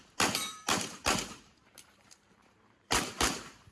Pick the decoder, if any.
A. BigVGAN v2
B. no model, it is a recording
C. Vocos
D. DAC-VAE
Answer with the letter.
A